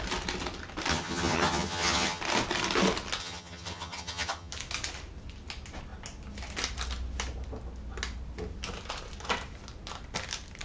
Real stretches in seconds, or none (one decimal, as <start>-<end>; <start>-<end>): 0.0-0.9; 2.2-3.2; 4.5-10.6